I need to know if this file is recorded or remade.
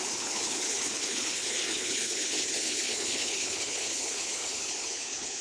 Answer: remade